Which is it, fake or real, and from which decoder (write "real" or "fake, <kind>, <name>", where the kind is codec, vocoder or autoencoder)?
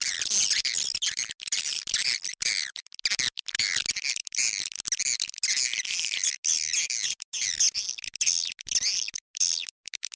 real